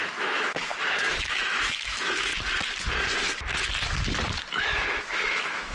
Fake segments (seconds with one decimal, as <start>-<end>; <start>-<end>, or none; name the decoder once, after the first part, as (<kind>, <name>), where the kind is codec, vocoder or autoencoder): 0.0-2.3 (autoencoder, DAC-VAE); 4.5-5.7